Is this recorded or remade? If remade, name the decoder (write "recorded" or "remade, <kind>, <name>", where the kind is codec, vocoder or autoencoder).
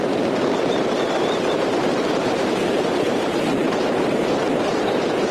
remade, vocoder, BigVGAN v2